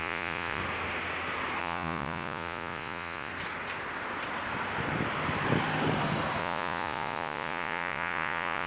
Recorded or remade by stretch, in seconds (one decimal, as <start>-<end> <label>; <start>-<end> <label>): 0.0-0.6 remade; 0.6-1.6 recorded; 1.6-3.3 remade; 3.3-6.4 recorded; 6.4-8.7 remade